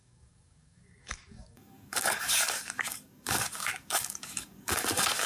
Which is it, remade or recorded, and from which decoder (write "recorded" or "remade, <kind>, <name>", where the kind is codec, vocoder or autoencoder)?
remade, codec, DAC